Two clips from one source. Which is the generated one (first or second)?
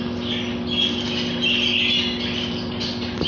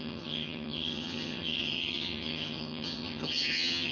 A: second